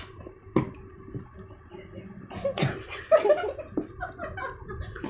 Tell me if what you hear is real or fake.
real